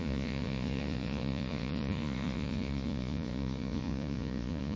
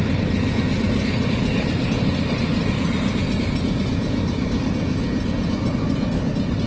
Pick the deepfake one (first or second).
first